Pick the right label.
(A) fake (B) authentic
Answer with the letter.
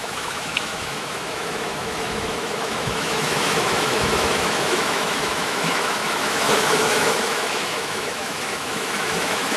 A